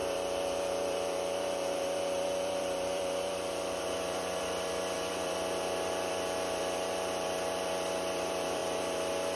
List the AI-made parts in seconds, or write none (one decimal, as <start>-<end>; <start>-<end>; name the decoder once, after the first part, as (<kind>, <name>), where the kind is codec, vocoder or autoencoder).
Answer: 0.0-9.4 (vocoder, BigVGAN v2)